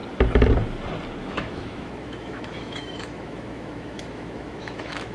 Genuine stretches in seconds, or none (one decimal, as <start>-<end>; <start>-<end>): 0.0-1.2